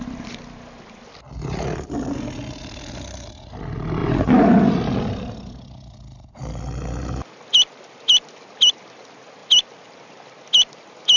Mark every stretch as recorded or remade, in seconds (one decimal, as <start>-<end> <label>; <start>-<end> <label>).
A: 0.0-11.2 recorded